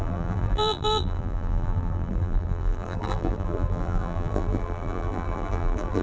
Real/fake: fake